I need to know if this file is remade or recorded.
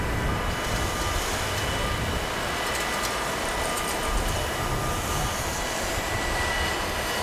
recorded